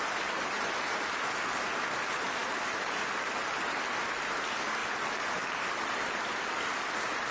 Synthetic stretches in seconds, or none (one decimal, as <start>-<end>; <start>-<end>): 4.8-7.3